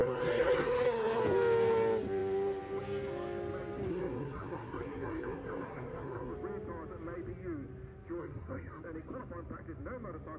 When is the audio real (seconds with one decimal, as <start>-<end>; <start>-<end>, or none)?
1.2-3.9; 6.3-8.2; 8.8-10.4